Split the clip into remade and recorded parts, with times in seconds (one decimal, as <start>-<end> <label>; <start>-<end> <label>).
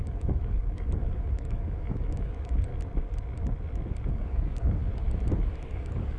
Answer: 0.0-2.7 remade; 2.7-4.1 recorded; 4.1-4.8 remade; 4.8-5.7 recorded; 5.7-6.2 remade